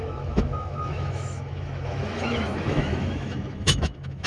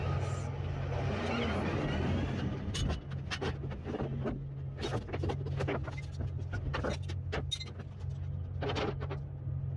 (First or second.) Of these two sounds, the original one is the second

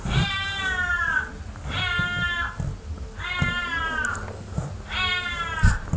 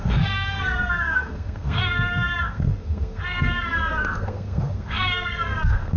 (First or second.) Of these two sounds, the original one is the first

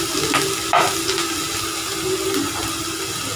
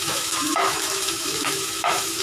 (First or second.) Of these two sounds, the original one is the first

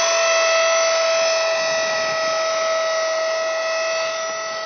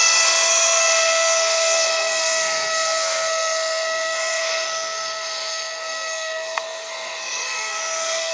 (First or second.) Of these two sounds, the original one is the first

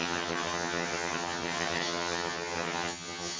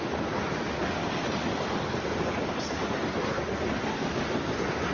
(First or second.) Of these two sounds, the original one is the second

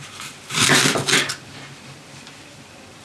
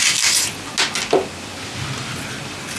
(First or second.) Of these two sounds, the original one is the second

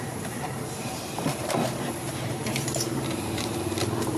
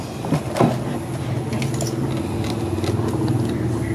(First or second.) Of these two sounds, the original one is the second